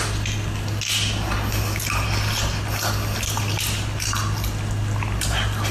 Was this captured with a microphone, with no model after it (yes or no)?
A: yes